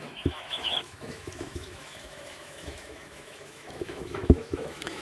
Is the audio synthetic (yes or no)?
yes